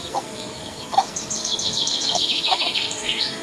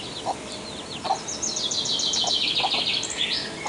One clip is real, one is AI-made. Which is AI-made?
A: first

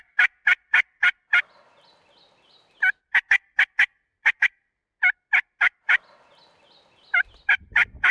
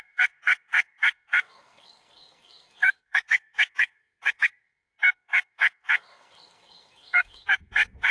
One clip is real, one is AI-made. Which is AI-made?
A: second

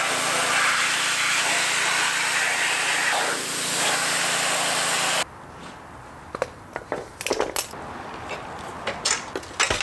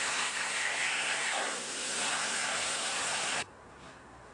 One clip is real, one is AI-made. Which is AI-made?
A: second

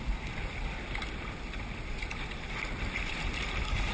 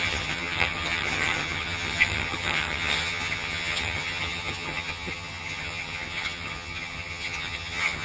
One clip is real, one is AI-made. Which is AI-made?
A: second